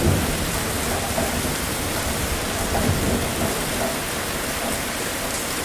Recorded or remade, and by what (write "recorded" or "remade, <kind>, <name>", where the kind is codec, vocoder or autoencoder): remade, vocoder, BigVGAN v2